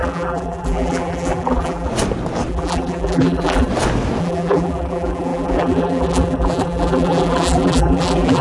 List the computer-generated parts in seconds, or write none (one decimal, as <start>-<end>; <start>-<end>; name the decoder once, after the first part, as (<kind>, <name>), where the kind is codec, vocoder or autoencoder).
0.0-1.9 (vocoder, BigVGAN v2); 2.5-3.7; 4.2-8.4